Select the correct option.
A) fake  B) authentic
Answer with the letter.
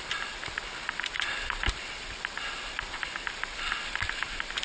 B